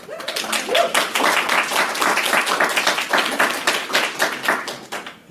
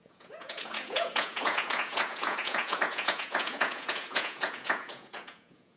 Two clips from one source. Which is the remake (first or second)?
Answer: second